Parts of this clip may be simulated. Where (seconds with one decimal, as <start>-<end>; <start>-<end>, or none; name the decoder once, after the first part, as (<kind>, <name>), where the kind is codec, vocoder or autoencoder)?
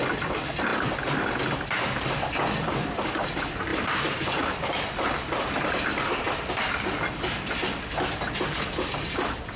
0.7-1.8 (vocoder, BigVGAN v2); 3.7-6.1